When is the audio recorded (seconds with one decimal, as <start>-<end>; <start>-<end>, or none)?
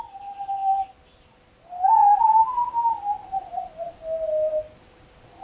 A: 0.0-5.4